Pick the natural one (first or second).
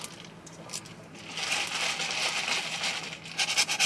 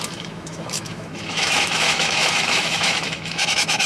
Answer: first